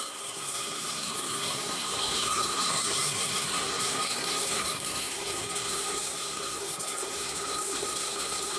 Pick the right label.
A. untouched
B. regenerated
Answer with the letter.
B